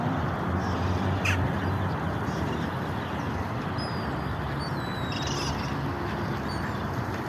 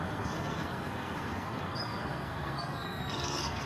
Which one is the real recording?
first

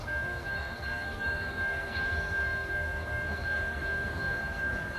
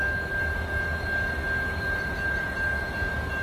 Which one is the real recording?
second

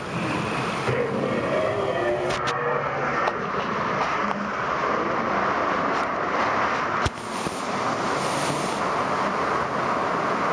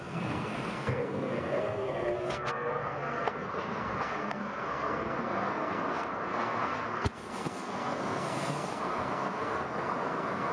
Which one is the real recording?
first